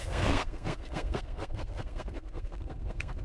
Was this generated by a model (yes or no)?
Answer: yes